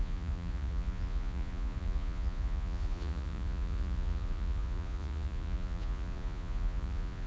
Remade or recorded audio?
remade